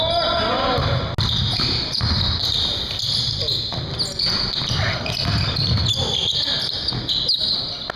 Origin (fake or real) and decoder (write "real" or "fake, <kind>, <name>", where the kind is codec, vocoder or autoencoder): real